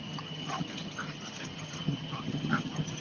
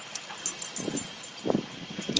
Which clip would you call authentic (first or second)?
second